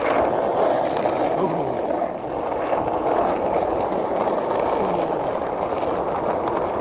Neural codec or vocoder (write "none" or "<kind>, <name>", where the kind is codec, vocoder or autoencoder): none